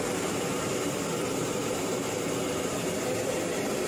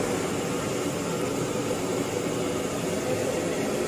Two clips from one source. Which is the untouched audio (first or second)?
second